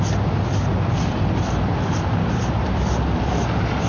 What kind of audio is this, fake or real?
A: real